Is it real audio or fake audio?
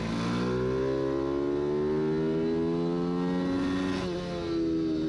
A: real